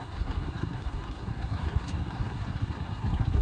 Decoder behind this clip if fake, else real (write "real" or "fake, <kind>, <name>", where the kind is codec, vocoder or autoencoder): fake, codec, SNAC